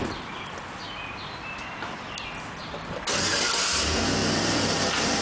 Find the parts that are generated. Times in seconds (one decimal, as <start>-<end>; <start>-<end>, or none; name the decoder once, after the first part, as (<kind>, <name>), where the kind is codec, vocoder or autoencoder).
4.2-5.2 (vocoder, BigVGAN v2)